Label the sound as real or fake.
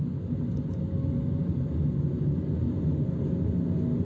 real